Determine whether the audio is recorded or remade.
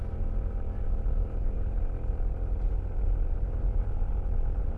remade